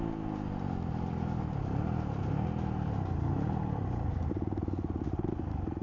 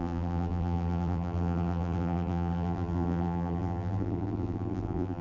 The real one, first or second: first